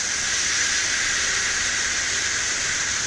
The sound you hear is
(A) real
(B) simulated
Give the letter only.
A